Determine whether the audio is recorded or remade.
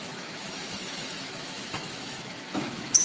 remade